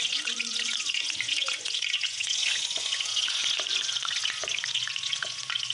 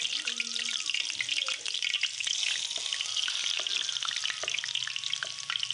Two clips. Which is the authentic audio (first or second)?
second